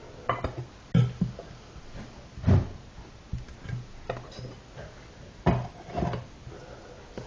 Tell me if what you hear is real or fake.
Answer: real